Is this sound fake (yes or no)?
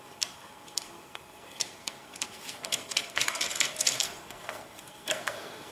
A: yes